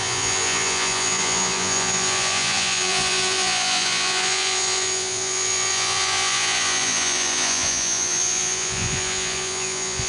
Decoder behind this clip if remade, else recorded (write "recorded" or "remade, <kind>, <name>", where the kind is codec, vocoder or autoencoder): remade, vocoder, Vocos